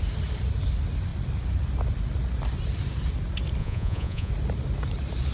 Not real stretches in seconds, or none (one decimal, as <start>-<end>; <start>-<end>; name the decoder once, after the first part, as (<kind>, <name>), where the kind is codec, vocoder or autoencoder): 3.6-4.3 (vocoder, Vocos)